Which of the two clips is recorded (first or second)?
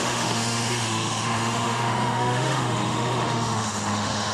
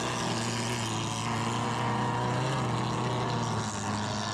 second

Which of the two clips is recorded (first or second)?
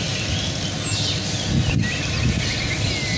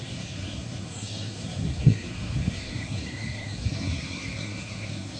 first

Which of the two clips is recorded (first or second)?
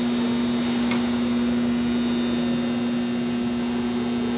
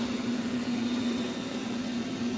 first